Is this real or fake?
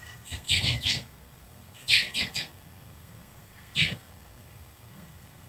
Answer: fake